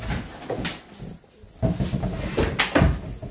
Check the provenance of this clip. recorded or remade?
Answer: recorded